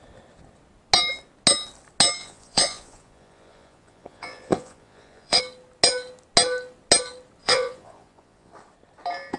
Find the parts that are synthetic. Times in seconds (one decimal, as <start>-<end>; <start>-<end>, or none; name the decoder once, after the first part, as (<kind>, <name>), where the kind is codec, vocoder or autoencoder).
2.2-5.4 (vocoder, Vocos); 7.4-8.5